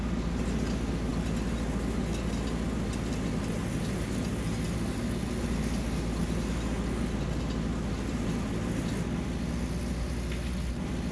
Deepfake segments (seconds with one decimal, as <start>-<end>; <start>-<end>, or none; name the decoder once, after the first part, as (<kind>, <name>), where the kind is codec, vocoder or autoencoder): none